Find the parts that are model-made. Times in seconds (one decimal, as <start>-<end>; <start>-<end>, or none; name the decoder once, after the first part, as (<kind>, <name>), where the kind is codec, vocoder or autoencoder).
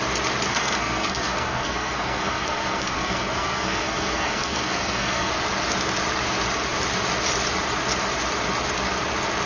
0.5-5.3 (codec, SNAC)